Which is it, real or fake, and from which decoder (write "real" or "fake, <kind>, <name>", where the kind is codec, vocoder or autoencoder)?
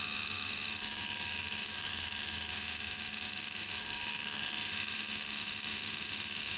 fake, autoencoder, DAC-VAE